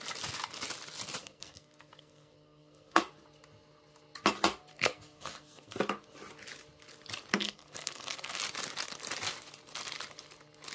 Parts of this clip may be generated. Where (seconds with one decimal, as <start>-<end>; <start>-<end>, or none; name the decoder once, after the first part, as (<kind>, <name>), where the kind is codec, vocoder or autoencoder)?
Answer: 1.2-3.0 (codec, SNAC); 4.7-5.8; 7.3-8.4